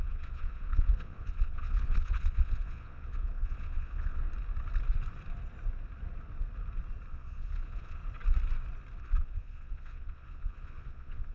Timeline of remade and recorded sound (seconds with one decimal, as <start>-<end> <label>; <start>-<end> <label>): 0.0-4.2 remade; 4.2-7.1 recorded; 7.1-8.0 remade; 8.0-9.0 recorded; 9.0-11.3 remade